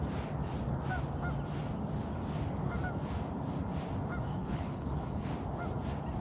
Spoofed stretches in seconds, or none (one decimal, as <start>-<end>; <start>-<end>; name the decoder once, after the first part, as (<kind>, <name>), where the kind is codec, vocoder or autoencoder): 4.3-5.3 (codec, HILCodec)